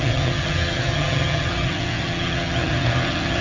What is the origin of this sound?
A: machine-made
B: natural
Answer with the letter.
A